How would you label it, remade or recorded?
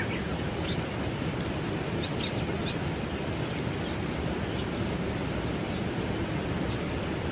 recorded